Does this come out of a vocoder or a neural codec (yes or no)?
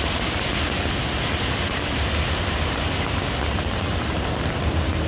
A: no